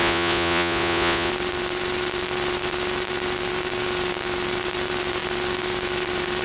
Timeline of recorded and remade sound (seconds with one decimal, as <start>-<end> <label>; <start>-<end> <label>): 0.0-1.3 remade; 1.3-6.4 recorded